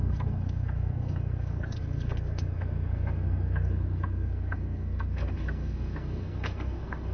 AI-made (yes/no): yes